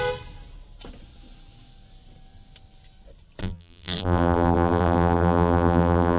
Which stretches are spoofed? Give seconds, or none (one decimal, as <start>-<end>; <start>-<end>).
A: 3.4-6.2